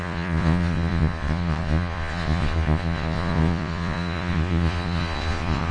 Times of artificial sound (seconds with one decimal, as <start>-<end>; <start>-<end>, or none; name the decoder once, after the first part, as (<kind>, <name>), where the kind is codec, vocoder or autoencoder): 0.0-5.7 (vocoder, Vocos)